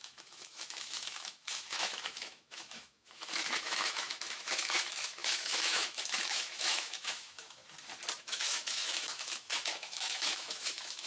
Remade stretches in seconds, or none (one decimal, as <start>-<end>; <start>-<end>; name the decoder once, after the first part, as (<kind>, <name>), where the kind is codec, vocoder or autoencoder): 0.0-7.6 (autoencoder, DAC-VAE); 8.2-11.1